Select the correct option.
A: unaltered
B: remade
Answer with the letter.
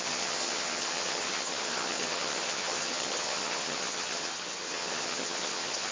B